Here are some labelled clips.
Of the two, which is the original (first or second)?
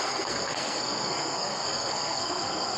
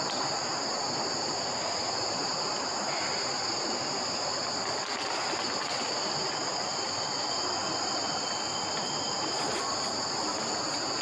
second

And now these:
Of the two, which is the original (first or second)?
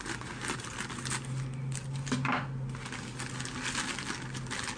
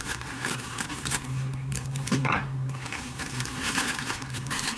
first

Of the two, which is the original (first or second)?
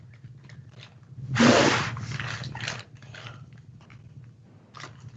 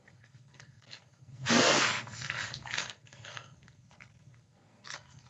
first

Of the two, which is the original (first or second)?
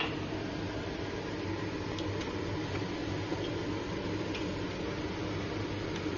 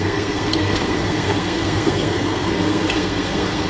first